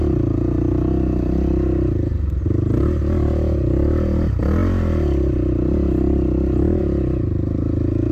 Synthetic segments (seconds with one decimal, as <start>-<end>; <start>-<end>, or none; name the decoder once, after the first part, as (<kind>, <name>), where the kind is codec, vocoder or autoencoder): none